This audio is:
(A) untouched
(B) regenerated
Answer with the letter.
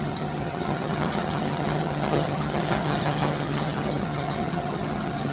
B